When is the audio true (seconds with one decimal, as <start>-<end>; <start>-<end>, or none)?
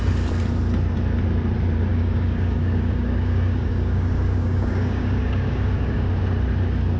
0.0-1.9; 6.1-7.0